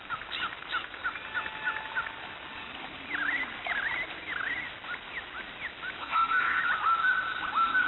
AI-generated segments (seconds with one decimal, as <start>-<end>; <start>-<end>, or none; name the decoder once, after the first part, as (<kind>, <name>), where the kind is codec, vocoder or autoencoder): 6.0-6.6 (codec, SNAC)